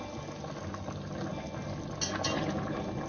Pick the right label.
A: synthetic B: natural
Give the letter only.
B